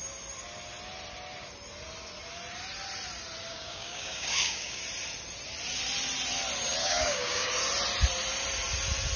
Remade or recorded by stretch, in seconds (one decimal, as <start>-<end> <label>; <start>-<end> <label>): 0.0-3.5 recorded; 3.5-4.8 remade; 4.8-6.8 recorded; 6.8-7.5 remade; 7.5-9.2 recorded